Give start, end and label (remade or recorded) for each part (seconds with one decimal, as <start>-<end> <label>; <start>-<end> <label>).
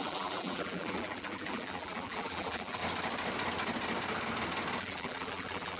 0.0-2.8 remade; 2.8-4.8 recorded; 4.8-5.8 remade